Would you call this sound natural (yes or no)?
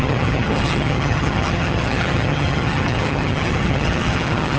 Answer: no